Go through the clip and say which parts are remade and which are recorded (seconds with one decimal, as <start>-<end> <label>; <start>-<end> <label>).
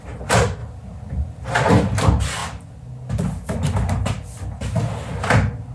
0.0-5.7 recorded